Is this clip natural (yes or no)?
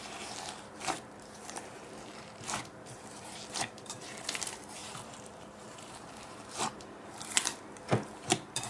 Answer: no